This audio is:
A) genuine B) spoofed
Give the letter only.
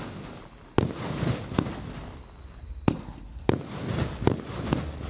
A